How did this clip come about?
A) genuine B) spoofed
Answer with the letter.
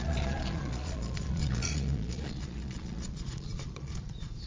B